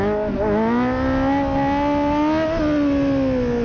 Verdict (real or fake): real